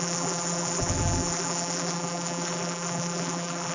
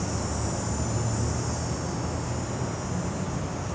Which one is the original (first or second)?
second